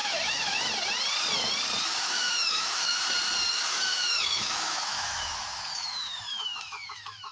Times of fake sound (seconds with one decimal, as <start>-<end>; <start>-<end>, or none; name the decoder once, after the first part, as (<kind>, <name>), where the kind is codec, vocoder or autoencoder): 0.0-0.6 (autoencoder, DAC-VAE); 2.0-3.0; 3.5-7.3